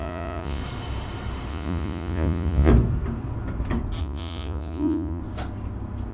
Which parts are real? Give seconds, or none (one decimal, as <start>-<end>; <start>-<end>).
0.6-1.5; 2.7-4.0; 5.2-6.1